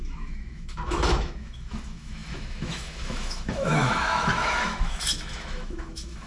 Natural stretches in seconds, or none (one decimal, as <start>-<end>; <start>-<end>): none